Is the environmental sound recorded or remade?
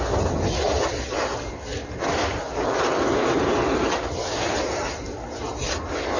recorded